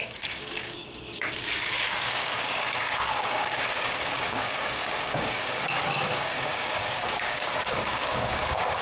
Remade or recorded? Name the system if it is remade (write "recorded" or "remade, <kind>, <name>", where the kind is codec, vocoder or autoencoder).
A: remade, codec, DAC